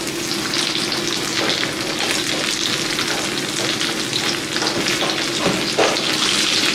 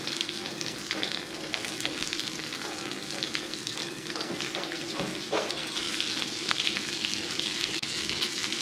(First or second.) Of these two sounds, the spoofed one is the second